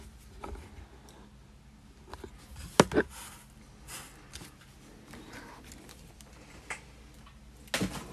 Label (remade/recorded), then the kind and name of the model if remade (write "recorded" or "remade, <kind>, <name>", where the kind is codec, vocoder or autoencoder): recorded